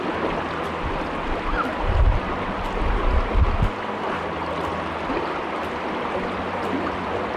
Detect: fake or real real